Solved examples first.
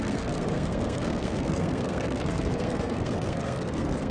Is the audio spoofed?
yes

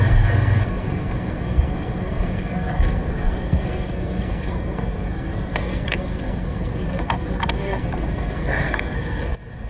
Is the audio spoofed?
yes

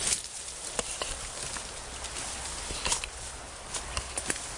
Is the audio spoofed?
no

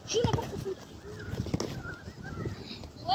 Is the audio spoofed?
no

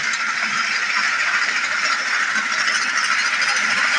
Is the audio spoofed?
no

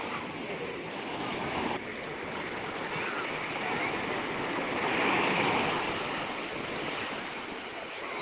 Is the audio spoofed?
no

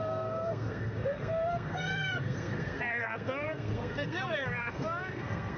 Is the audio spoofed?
yes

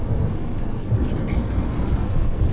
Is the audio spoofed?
yes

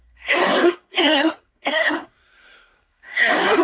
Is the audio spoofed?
yes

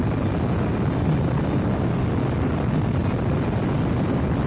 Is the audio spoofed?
no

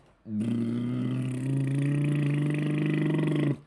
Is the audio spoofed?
no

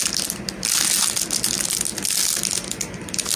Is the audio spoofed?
no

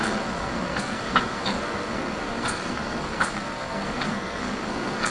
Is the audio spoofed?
yes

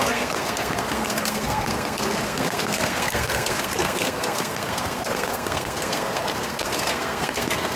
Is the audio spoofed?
yes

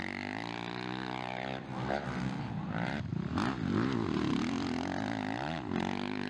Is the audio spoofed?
no